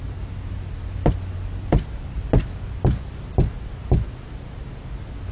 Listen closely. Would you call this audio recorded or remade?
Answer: recorded